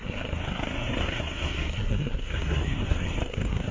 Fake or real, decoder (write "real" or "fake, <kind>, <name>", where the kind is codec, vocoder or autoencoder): fake, codec, SNAC